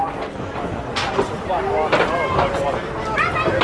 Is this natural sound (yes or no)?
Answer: yes